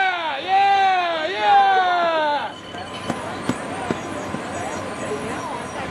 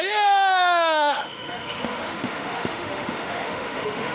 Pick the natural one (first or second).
first